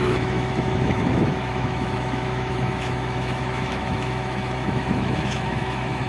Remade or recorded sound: remade